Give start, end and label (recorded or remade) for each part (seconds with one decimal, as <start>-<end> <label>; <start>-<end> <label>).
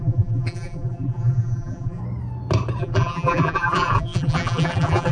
0.0-2.0 remade; 2.0-2.8 recorded; 2.8-5.1 remade